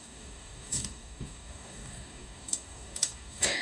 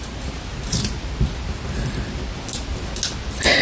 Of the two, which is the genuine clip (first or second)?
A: second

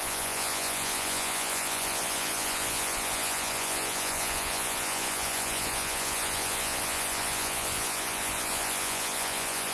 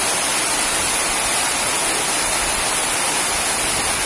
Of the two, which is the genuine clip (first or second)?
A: second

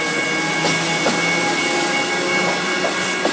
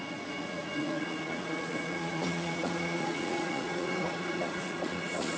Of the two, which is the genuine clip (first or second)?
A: first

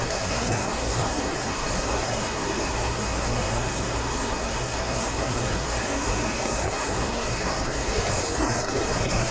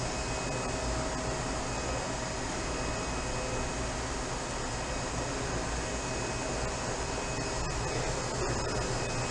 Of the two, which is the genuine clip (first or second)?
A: second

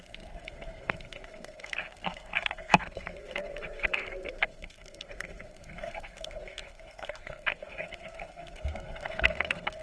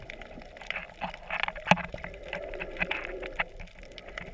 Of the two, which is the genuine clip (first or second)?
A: second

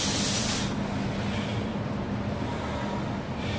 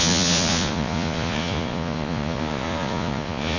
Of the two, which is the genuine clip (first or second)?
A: first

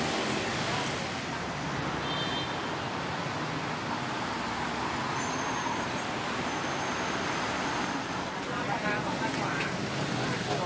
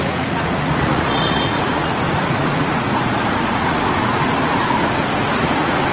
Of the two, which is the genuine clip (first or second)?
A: first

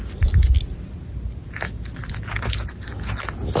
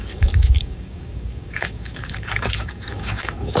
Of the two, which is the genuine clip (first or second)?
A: first